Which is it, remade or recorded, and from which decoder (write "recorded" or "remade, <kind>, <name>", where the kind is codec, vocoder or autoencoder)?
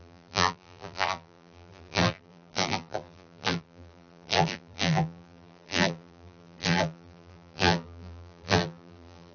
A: remade, vocoder, BigVGAN v2